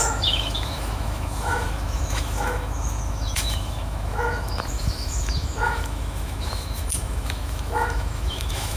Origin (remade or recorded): remade